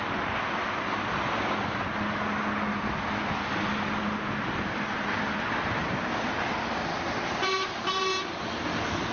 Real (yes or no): yes